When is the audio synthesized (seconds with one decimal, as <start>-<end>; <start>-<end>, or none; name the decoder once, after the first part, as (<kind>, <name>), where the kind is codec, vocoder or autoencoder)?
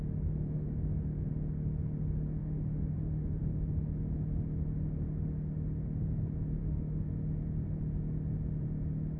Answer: 2.4-3.4 (autoencoder, DAC-VAE); 6.6-7.1